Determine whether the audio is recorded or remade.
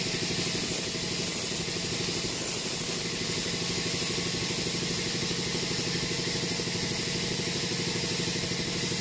recorded